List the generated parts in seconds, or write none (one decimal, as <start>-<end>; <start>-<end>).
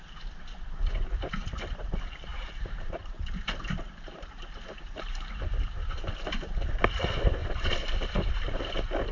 0.8-1.3; 2.3-5.3; 7.4-8.6